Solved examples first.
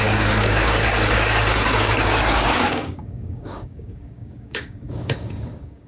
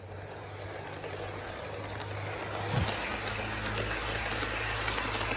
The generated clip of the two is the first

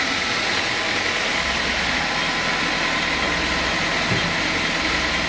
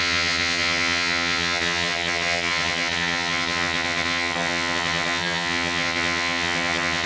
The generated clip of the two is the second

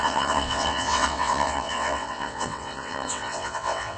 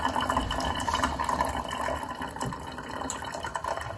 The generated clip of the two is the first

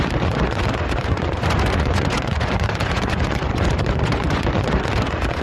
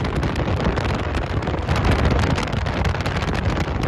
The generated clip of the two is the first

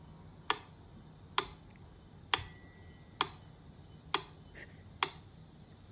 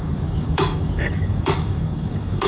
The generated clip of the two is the second